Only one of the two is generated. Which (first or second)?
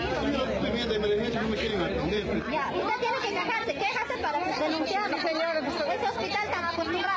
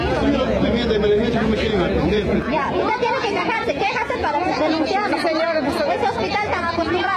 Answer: second